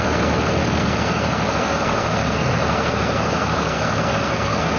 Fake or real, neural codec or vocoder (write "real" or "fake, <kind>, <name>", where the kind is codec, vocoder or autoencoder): fake, codec, SNAC